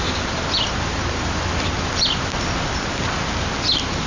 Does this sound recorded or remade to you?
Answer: recorded